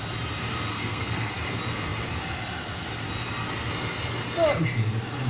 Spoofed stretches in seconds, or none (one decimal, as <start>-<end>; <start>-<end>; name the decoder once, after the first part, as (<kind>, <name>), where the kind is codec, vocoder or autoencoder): 0.7-1.3 (codec, SNAC)